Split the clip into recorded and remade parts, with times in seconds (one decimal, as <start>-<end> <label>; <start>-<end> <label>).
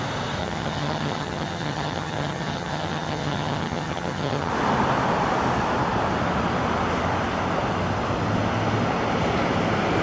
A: 0.0-0.4 recorded; 0.4-4.5 remade; 4.5-10.0 recorded